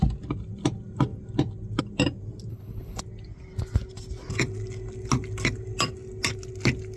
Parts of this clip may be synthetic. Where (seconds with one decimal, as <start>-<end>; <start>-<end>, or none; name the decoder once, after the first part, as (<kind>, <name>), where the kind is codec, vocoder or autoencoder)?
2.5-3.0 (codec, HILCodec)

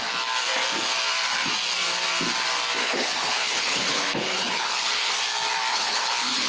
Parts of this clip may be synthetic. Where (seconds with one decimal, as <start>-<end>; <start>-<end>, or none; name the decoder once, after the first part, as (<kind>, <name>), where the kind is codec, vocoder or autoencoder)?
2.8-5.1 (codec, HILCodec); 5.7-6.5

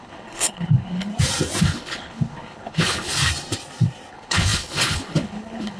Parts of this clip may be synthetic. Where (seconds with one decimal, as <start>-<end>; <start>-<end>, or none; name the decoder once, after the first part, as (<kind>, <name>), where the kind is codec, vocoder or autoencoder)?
0.0-1.1 (codec, HILCodec); 1.6-3.1; 4.1-5.8